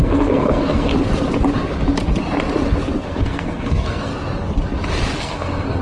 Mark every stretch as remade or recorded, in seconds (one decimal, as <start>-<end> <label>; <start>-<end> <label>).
0.0-0.9 remade; 0.9-3.0 recorded; 3.0-4.1 remade; 4.1-5.2 recorded; 5.2-5.8 remade

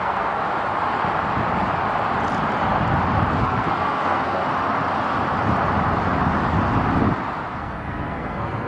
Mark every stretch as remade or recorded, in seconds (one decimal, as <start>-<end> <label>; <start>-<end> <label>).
0.0-0.4 remade; 0.4-3.3 recorded; 3.3-4.4 remade; 4.4-7.5 recorded; 7.5-8.7 remade